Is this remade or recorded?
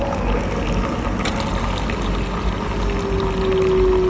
recorded